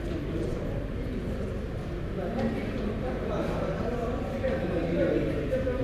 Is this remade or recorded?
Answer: recorded